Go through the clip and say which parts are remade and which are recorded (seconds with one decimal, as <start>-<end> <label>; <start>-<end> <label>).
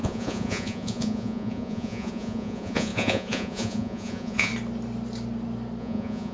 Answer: 0.0-4.5 remade; 4.5-5.8 recorded; 5.8-6.3 remade